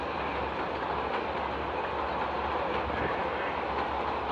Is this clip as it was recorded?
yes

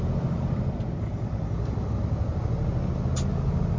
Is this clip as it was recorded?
yes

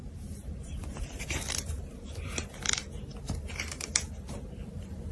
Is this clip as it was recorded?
no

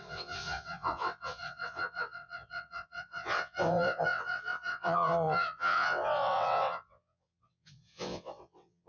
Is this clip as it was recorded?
no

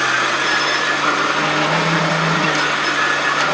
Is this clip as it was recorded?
yes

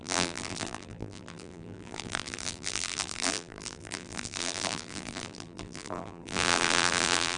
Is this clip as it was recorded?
no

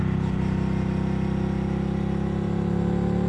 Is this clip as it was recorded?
yes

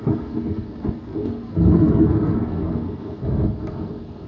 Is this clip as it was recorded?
no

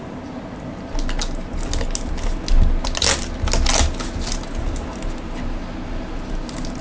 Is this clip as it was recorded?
yes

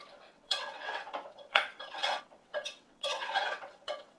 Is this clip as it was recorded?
no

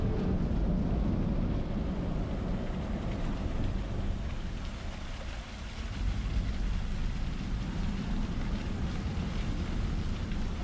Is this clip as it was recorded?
yes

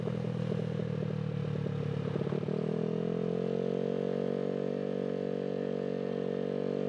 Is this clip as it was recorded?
yes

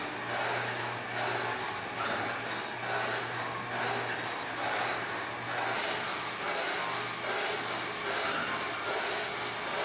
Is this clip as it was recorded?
yes